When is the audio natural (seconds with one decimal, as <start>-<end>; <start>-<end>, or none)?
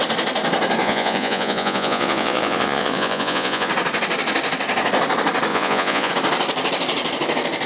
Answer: 0.0-0.8; 3.7-5.5; 6.1-7.7